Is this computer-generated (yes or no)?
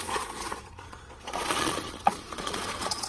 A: yes